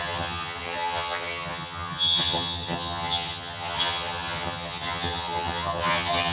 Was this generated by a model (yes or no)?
yes